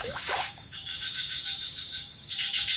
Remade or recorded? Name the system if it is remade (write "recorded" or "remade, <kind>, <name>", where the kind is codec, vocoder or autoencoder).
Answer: remade, codec, DAC